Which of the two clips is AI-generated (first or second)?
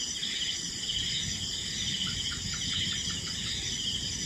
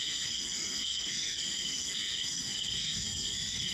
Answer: second